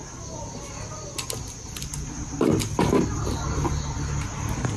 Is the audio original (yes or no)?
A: yes